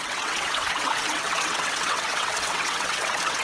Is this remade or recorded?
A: remade